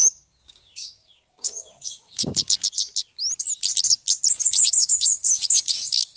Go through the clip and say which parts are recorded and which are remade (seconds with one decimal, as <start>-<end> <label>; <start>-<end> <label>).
0.0-2.3 remade; 2.3-4.3 recorded; 4.3-6.2 remade